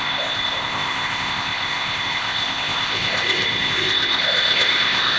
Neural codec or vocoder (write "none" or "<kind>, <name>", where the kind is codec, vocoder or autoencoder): codec, ZipCodec